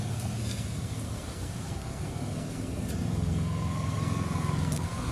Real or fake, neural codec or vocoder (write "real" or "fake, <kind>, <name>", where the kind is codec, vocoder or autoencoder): fake, codec, SNAC